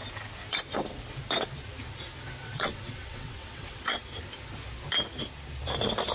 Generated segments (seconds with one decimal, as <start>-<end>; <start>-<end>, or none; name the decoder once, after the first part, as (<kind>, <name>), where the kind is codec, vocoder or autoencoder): 2.4-4.0 (vocoder, WaveNeXt)